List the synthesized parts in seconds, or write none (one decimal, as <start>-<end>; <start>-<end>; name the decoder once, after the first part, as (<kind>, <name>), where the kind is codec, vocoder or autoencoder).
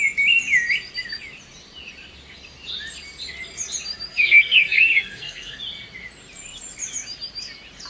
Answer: 4.1-5.6 (codec, SNAC)